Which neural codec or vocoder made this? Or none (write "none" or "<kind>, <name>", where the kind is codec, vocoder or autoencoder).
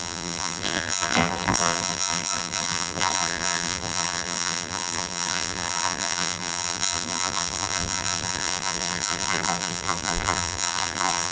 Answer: vocoder, BigVGAN v2